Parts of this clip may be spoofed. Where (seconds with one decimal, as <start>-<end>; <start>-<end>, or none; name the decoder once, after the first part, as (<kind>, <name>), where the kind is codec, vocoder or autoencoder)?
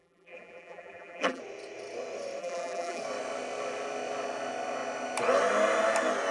0.0-1.4 (vocoder, BigVGAN v2); 2.4-3.0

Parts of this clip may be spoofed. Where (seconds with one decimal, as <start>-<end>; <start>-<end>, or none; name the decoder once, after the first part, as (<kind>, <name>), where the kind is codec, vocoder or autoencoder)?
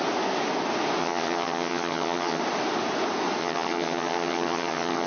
1.0-2.4 (vocoder, HiFi-GAN); 3.4-5.1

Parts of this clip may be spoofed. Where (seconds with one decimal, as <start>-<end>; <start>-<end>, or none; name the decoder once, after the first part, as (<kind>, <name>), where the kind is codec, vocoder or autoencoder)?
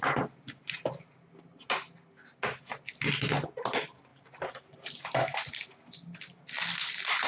none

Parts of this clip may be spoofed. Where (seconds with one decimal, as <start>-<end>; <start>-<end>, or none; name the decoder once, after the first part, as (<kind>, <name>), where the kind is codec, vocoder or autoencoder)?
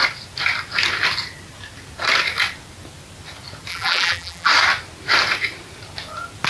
3.7-4.5 (vocoder, BigVGAN v2)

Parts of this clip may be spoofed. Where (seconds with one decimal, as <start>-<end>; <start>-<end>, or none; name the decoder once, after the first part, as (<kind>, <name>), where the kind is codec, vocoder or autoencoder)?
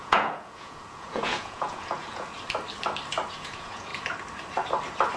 0.0-2.3 (vocoder, Vocos); 3.3-3.9